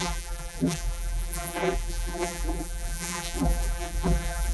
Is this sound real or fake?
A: fake